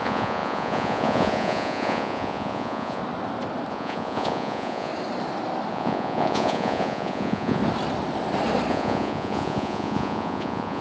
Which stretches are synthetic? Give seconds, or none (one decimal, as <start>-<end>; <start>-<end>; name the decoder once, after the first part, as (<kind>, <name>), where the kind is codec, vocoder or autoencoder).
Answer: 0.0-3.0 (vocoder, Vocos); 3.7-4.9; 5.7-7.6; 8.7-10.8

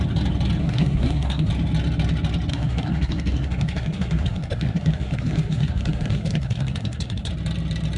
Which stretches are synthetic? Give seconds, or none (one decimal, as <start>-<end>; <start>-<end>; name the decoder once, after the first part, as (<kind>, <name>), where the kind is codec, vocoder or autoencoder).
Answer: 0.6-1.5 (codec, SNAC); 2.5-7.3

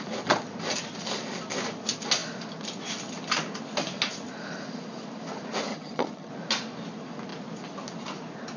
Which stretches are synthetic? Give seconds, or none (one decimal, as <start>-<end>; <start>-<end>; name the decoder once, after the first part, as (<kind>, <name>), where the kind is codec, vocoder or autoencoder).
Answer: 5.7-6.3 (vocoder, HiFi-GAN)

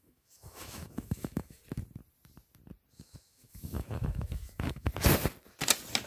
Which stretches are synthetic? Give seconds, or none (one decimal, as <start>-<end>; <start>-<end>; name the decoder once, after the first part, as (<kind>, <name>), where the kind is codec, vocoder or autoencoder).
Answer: 0.0-1.6 (autoencoder, DAC-VAE); 2.9-4.9

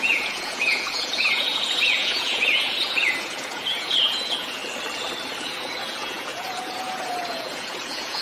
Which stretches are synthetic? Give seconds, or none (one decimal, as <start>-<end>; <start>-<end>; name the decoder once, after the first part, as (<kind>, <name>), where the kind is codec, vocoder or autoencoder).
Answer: 0.0-4.6 (vocoder, Vocos); 5.4-8.2